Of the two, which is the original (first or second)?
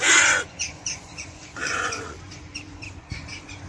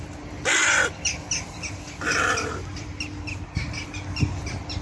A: second